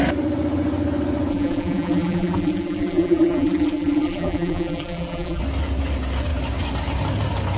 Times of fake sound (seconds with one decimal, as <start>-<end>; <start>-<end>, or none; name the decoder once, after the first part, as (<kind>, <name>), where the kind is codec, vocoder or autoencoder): 1.3-5.4 (vocoder, BigVGAN v2)